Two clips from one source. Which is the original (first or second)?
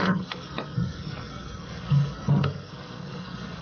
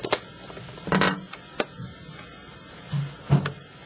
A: second